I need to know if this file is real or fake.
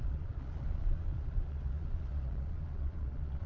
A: fake